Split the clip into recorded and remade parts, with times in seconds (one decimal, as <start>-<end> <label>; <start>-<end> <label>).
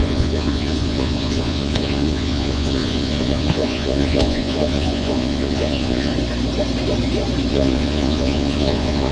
0.0-6.1 remade; 6.1-7.5 recorded; 7.5-9.1 remade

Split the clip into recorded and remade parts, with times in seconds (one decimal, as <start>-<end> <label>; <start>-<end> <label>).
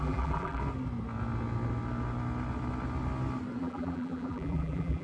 0.0-0.6 remade; 0.6-3.6 recorded; 3.6-5.0 remade